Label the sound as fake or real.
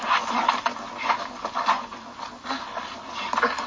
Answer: real